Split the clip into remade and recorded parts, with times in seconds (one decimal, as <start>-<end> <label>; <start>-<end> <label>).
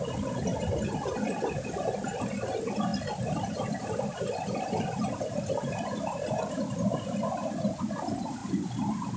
0.0-0.5 recorded; 0.5-1.1 remade; 1.1-8.4 recorded; 8.4-9.2 remade